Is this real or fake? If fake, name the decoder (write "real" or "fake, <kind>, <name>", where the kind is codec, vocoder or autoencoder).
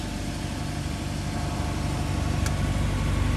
real